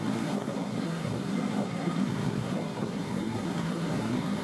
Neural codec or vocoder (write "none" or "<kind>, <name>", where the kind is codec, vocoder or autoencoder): codec, SNAC